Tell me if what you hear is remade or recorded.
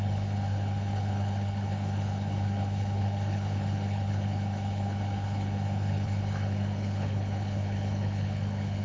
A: remade